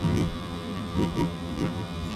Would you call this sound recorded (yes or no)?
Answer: no